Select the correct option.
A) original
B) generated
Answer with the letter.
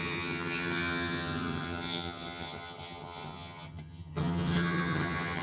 B